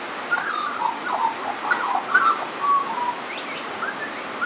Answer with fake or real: real